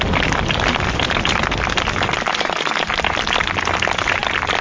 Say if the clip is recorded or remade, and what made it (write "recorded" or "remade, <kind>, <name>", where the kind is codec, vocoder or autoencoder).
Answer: recorded